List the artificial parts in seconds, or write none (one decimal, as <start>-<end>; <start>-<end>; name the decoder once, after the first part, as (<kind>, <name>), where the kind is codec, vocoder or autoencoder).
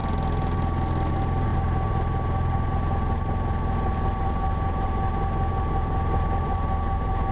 1.1-7.3 (vocoder, BigVGAN v2)